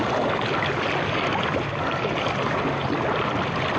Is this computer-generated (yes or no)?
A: no